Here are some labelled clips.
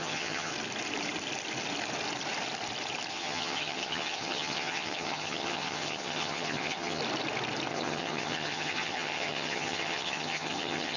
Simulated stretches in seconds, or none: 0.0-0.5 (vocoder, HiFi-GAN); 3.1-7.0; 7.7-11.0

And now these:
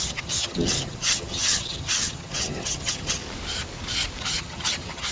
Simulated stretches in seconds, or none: 0.0-3.2 (vocoder, HiFi-GAN); 4.2-5.1

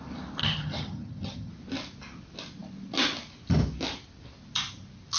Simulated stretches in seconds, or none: 0.4-1.5 (vocoder, HiFi-GAN)

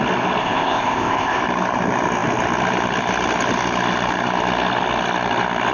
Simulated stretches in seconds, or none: 0.4-1.4 (codec, ZipCodec)

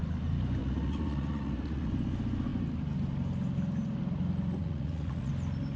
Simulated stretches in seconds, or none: 0.6-1.9 (vocoder, Vocos); 4.6-5.3